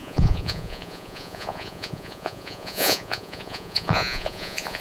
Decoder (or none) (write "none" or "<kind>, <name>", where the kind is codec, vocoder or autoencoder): vocoder, Vocos